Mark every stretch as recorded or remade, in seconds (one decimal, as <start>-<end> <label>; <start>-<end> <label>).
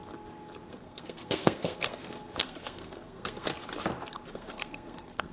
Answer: 0.0-0.7 recorded; 0.7-3.5 remade; 3.5-4.3 recorded; 4.3-5.3 remade